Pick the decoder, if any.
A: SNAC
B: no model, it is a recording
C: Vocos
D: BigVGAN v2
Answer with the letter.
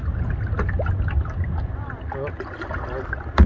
B